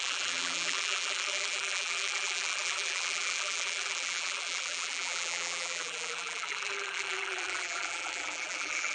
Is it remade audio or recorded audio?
remade